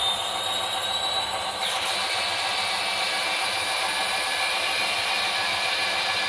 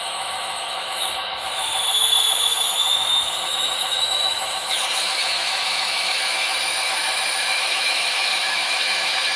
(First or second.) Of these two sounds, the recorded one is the first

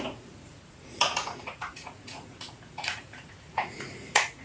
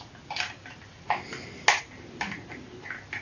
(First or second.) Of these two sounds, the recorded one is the second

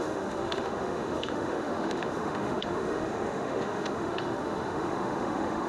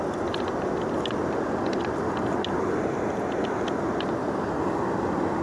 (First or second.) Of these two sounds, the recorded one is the second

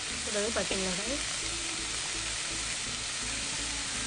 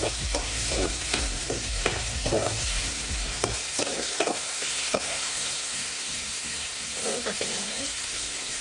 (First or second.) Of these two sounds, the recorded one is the first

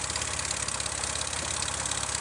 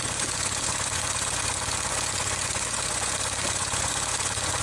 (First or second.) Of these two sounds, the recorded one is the first